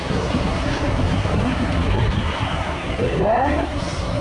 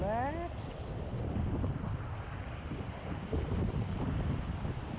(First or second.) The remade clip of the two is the first